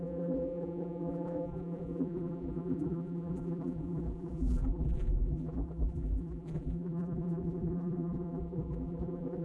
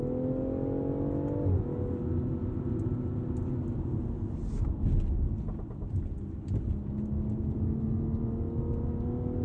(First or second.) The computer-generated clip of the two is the first